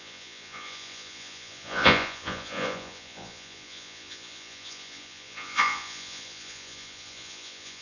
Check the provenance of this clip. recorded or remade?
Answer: remade